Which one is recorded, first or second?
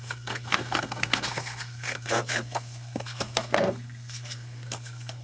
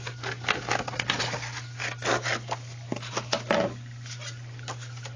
second